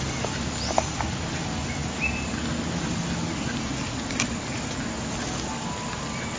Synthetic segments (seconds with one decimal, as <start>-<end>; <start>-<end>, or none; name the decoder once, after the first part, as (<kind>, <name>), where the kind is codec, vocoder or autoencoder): none